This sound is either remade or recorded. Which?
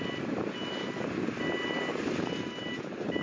recorded